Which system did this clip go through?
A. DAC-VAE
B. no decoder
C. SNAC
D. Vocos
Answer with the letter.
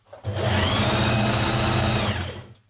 B